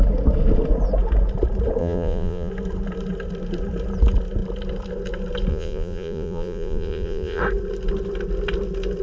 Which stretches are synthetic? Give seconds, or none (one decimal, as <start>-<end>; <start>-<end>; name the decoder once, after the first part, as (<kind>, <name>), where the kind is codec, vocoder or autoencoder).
1.8-2.5 (vocoder, Vocos); 5.5-7.4